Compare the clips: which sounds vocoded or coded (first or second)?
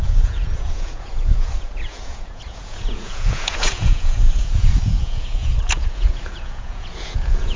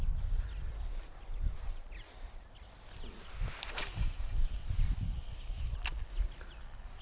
first